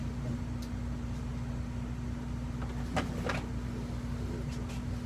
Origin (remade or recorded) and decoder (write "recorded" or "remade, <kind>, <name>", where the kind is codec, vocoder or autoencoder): recorded